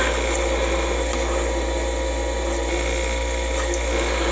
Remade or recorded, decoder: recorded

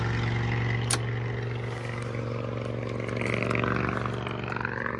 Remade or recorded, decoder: recorded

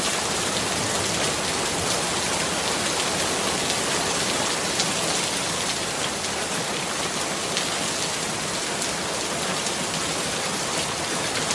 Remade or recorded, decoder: recorded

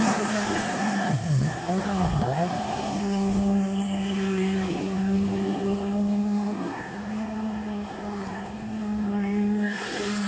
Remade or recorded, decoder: remade, codec, SNAC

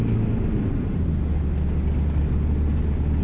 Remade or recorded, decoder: recorded